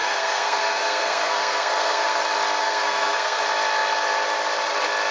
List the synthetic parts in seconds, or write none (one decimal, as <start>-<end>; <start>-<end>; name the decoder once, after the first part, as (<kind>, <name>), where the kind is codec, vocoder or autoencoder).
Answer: 0.0-2.2 (codec, SNAC); 2.6-3.4